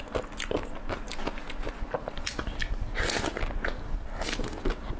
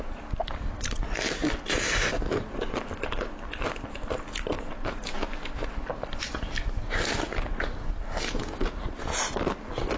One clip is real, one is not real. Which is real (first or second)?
first